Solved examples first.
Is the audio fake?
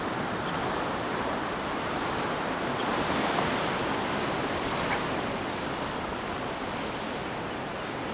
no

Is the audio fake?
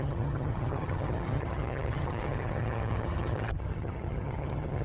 yes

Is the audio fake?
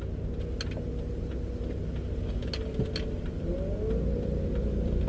no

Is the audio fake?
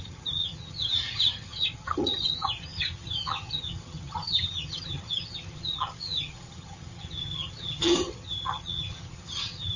yes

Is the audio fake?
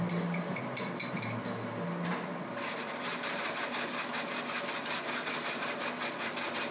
no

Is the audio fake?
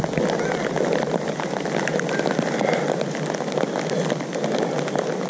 no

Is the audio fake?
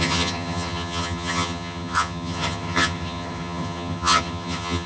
yes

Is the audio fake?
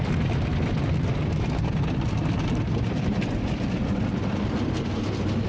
no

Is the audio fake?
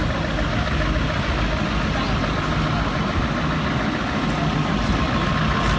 no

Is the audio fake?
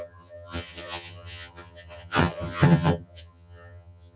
yes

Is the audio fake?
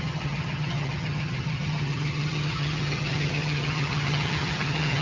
yes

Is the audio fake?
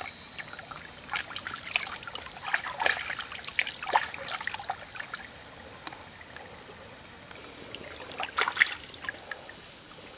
no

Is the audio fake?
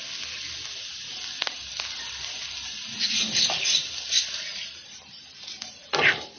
no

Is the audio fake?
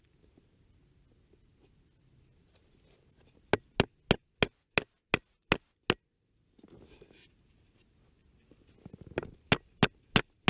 no